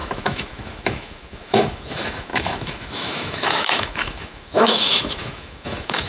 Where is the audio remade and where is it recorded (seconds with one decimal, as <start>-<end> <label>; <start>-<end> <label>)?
0.0-6.1 remade